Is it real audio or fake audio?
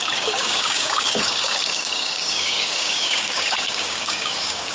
fake